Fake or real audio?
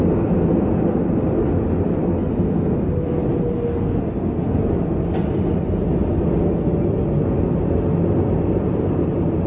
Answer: real